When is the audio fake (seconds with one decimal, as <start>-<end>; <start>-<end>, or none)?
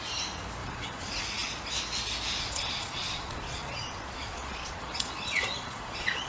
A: 0.6-1.2; 2.4-6.3